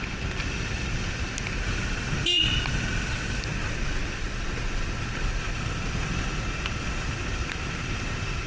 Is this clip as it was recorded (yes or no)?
yes